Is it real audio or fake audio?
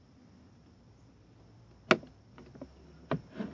real